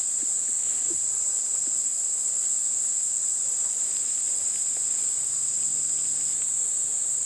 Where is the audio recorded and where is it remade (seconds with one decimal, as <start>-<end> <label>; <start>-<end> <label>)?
0.0-3.2 recorded; 3.2-3.9 remade; 3.9-7.3 recorded